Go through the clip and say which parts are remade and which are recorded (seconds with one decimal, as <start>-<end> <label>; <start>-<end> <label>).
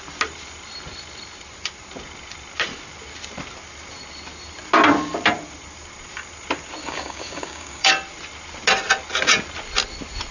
0.0-6.8 recorded; 6.8-7.9 remade; 7.9-10.3 recorded